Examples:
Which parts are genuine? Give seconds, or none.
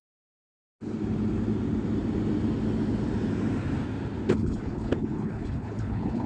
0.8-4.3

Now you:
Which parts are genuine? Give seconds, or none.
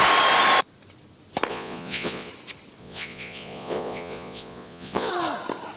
0.0-1.5; 2.3-2.8; 5.1-5.8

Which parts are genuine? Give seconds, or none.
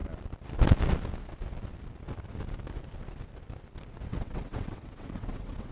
0.0-4.1